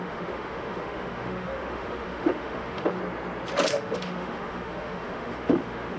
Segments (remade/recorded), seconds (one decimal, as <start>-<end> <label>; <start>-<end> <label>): 0.0-3.0 remade; 3.0-3.7 recorded; 3.7-6.0 remade